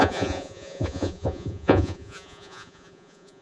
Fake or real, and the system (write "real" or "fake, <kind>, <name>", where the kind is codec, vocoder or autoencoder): fake, vocoder, Vocos